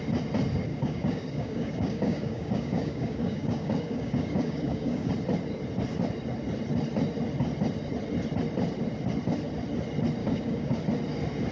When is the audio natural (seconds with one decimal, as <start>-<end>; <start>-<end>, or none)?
0.0-0.7; 5.1-10.2; 10.8-11.5